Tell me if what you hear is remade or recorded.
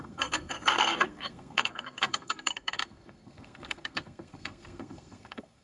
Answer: remade